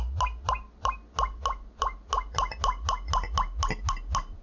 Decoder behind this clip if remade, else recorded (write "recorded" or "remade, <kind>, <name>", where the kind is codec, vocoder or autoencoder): recorded